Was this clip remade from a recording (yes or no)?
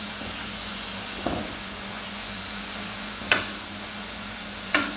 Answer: yes